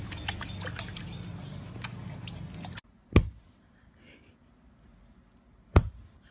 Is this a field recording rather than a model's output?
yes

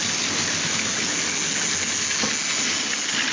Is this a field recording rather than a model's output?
yes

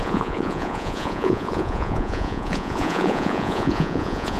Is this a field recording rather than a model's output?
no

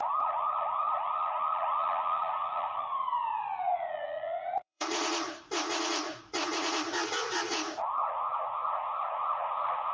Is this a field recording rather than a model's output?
no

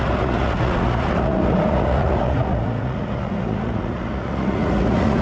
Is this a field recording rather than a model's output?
no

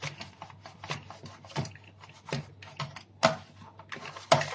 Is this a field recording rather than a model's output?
yes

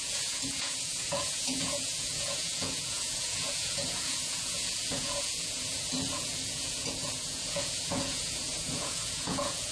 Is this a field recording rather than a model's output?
no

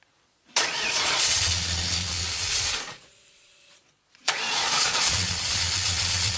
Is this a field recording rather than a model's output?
no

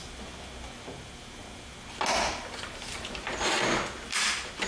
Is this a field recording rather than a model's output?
yes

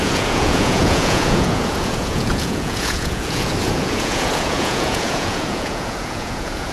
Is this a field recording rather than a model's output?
no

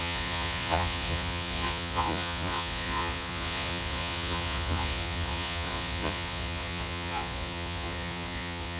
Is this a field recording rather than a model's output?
no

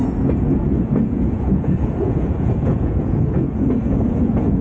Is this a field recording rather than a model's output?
no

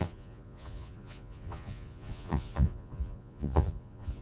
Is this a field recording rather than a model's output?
no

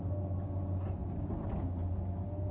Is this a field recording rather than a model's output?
yes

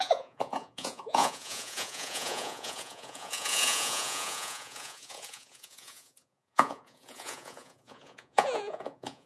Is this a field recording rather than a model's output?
no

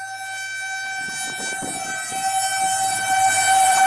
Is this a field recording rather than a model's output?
yes